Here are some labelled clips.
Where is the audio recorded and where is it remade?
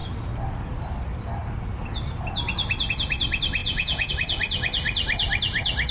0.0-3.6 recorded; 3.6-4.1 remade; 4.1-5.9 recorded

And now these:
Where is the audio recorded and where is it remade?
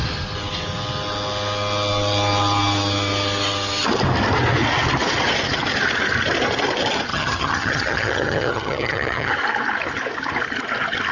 0.0-7.1 recorded; 7.1-9.3 remade; 9.3-11.1 recorded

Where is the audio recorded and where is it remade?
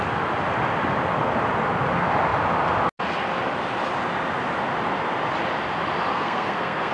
0.0-6.1 recorded; 6.1-6.9 remade